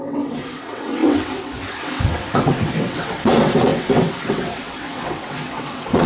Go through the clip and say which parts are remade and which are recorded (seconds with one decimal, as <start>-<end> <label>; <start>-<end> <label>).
0.0-6.1 remade